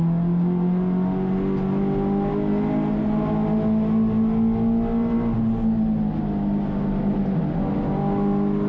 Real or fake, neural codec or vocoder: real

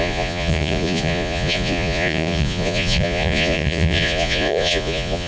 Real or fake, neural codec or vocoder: fake, vocoder, Vocos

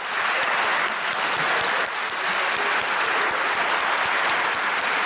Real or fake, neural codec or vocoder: real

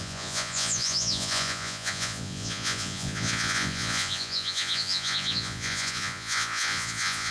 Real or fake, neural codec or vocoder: fake, vocoder, Vocos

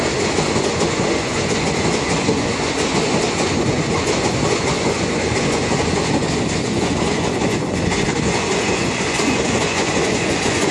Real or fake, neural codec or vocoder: fake, vocoder, Vocos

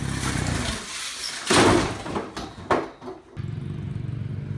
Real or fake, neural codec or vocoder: real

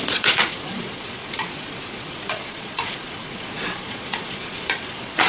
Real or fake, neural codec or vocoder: fake, vocoder, Vocos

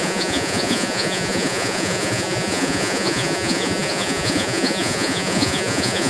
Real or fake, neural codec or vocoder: fake, vocoder, Vocos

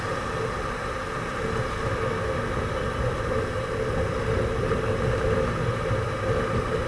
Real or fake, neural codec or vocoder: real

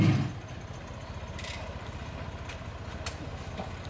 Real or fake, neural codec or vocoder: real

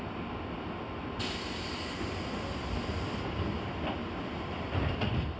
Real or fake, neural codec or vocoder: real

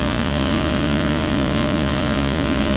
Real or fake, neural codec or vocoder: fake, vocoder, Vocos